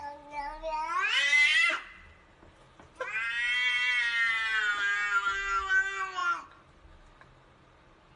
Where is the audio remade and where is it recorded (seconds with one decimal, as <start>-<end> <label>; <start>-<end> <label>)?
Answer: 0.0-8.2 recorded